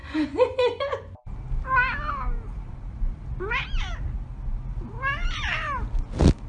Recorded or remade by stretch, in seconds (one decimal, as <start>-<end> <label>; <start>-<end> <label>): 0.0-1.2 remade; 1.2-6.5 recorded